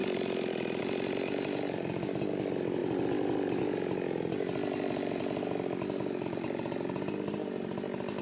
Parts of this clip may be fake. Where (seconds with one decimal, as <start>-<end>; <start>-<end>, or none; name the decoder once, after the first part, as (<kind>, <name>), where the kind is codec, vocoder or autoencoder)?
none